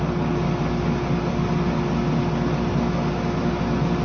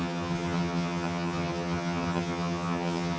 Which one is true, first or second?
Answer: first